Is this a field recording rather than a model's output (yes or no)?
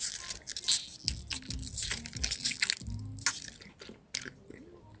yes